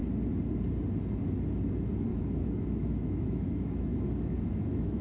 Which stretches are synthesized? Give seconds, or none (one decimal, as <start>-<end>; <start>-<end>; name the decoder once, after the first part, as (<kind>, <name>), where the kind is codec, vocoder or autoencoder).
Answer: 2.1-5.0 (autoencoder, DAC-VAE)